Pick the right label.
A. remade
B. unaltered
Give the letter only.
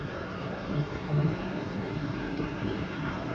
A